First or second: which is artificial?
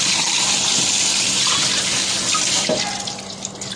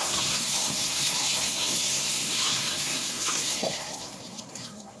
second